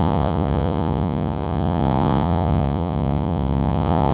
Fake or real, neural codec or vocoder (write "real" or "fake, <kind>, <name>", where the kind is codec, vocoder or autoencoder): fake, vocoder, Vocos